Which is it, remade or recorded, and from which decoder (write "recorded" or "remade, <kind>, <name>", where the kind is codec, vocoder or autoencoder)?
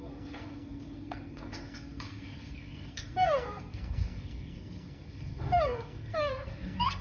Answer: remade, codec, SNAC